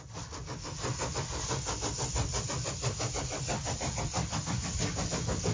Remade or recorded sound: recorded